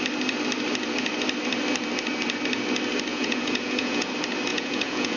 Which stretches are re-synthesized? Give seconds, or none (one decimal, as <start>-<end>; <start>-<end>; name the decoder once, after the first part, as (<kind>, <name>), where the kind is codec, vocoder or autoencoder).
3.1-4.1 (vocoder, Vocos); 4.5-5.2